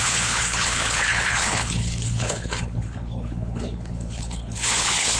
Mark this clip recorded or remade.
remade